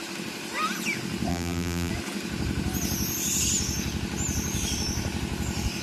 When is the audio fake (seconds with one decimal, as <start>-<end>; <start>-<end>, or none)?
1.3-1.9